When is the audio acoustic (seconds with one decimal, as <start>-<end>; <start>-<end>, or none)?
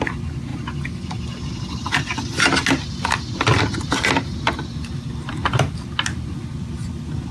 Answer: 0.0-7.3